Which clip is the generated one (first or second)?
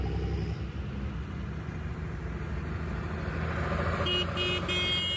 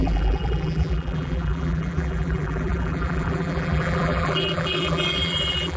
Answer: second